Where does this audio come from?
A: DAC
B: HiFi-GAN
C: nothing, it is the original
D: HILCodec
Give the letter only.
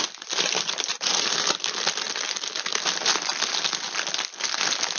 C